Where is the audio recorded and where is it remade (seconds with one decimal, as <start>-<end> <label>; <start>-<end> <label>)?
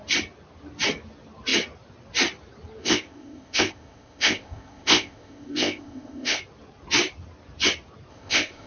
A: 0.0-2.8 recorded; 2.8-6.4 remade; 6.4-8.1 recorded; 8.1-8.7 remade